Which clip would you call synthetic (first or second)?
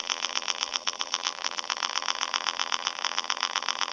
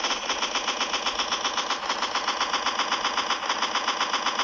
first